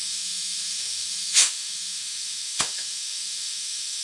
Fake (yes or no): yes